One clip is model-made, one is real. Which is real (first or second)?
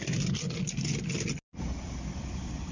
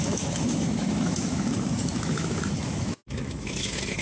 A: first